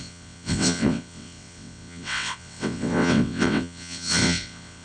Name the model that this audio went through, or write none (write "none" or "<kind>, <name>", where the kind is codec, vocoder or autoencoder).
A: vocoder, WaveNeXt